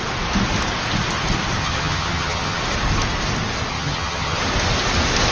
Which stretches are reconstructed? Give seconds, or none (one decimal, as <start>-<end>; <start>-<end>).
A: 1.6-2.6; 3.7-4.4